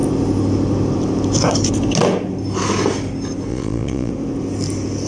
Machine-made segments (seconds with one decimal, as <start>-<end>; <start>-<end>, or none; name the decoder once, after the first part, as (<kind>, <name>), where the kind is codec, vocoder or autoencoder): 3.5-4.1 (vocoder, Vocos)